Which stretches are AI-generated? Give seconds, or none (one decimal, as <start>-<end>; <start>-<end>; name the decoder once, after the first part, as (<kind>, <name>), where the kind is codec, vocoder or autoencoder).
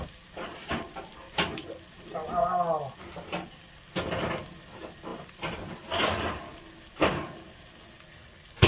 8.1-8.7 (codec, HILCodec)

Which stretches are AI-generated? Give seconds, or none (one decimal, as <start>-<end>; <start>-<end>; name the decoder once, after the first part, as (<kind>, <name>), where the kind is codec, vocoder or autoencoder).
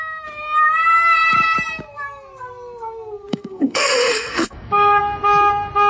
3.3-5.0 (codec, SNAC)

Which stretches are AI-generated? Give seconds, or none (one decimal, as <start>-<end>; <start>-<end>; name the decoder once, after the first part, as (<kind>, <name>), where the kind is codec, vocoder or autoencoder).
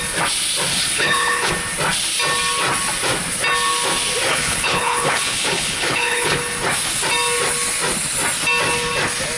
0.7-1.5 (codec, HILCodec); 4.3-6.4